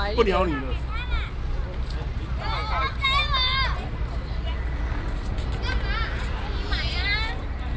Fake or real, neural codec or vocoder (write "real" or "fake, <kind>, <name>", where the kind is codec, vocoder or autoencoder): real